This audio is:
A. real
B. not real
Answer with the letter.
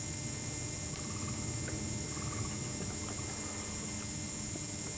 A